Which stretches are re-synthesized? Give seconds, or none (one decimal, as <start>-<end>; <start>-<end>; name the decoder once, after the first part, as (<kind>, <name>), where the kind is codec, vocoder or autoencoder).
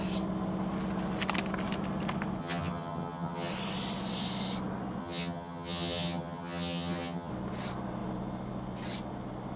2.4-3.5 (vocoder, HiFi-GAN); 5.0-7.3